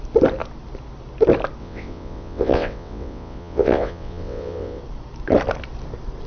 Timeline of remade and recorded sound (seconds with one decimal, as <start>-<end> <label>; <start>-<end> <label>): 0.0-1.6 recorded; 1.6-4.8 remade; 4.8-6.3 recorded